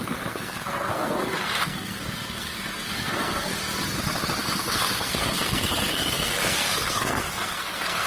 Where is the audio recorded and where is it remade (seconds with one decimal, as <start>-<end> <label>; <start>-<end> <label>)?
0.0-3.5 remade; 3.5-4.4 recorded; 4.4-8.1 remade